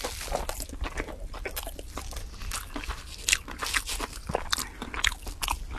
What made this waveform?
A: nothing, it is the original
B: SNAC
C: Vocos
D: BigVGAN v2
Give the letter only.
A